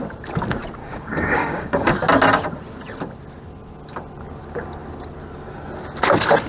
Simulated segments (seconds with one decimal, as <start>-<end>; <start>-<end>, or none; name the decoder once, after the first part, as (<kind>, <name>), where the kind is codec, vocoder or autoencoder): 0.8-1.9 (codec, DAC)